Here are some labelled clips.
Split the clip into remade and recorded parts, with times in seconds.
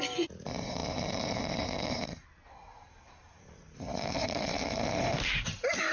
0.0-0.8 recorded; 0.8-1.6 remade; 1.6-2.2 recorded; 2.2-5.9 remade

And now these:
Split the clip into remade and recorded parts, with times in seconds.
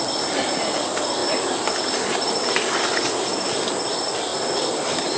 0.0-5.2 recorded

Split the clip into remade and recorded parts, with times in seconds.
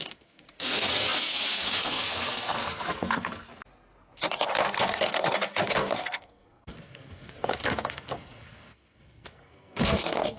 0.0-3.5 remade; 3.5-4.6 recorded; 4.6-10.4 remade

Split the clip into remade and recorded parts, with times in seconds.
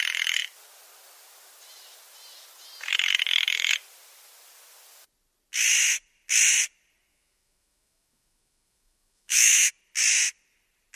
0.0-7.1 recorded; 7.1-9.7 remade; 9.7-11.0 recorded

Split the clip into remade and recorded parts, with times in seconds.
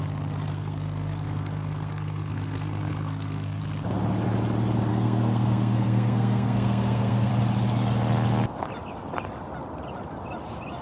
0.0-0.5 recorded; 0.5-3.6 remade; 3.6-4.9 recorded; 4.9-7.3 remade; 7.3-10.8 recorded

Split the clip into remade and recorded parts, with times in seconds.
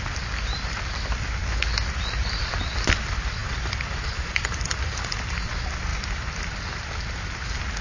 0.0-3.4 recorded; 3.4-5.5 remade; 5.5-7.8 recorded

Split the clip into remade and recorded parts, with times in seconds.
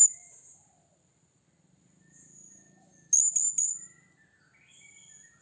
0.0-2.9 remade; 2.9-3.7 recorded; 3.7-5.4 remade